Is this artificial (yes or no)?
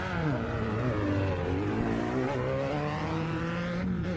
yes